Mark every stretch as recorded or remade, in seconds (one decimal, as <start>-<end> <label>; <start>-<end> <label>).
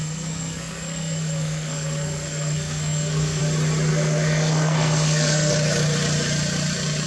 0.0-3.4 remade; 3.4-3.9 recorded; 3.9-5.5 remade; 5.5-7.1 recorded